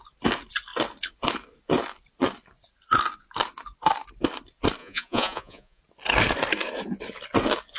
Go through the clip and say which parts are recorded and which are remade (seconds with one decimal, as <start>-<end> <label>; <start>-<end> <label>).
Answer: 0.0-4.8 recorded; 4.8-5.8 remade; 5.8-7.8 recorded